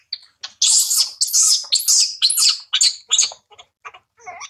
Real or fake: real